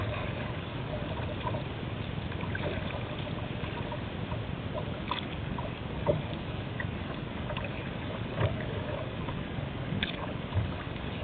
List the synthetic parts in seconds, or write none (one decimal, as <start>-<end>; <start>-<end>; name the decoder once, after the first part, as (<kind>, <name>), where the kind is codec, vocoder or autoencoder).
0.0-1.0 (codec, DAC); 5.0-11.2